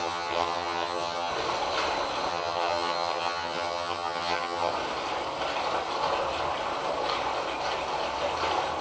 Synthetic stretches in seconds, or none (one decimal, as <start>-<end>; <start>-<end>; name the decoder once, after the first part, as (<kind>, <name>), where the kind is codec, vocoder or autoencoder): 0.0-1.3 (vocoder, HiFi-GAN); 2.3-4.7